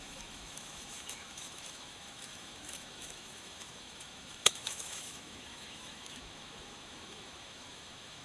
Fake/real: fake